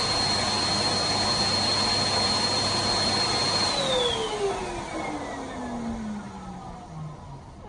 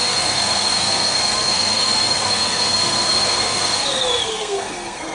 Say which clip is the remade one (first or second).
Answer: second